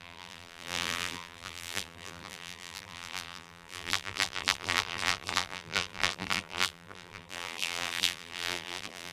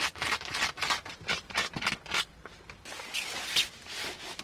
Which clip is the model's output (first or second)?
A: first